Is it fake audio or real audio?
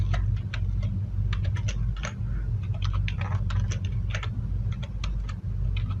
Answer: real